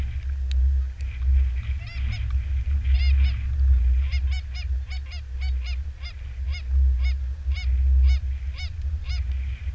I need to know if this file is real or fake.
real